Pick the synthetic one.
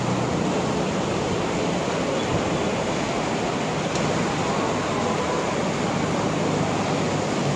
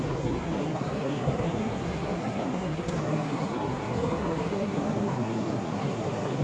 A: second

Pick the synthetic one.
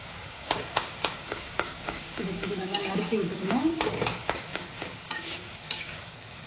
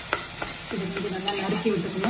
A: first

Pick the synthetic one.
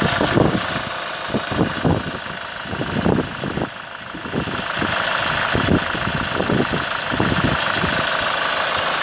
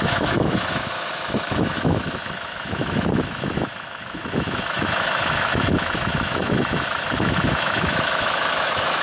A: second